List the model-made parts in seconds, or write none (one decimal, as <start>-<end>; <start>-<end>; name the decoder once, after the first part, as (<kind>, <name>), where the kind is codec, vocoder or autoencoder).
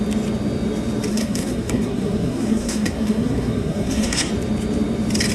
1.1-4.3 (codec, SNAC)